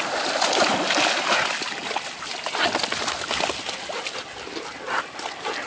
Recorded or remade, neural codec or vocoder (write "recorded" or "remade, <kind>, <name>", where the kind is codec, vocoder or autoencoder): recorded